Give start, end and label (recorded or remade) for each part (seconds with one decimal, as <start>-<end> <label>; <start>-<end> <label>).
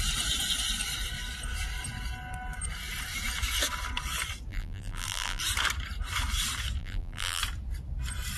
0.0-4.5 recorded; 4.5-5.4 remade; 5.4-6.8 recorded; 6.8-7.4 remade; 7.4-8.4 recorded